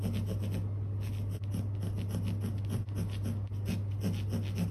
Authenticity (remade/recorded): recorded